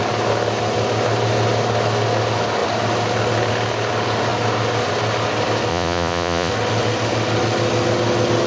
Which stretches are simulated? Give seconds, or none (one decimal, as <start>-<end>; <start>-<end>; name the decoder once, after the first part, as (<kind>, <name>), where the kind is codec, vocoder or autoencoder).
5.7-6.5 (vocoder, Vocos)